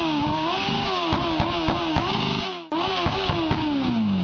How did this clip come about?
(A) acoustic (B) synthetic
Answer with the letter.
B